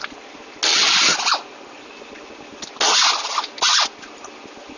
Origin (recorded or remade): recorded